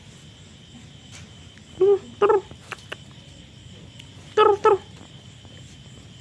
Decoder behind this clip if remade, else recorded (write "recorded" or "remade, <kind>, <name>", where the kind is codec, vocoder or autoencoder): recorded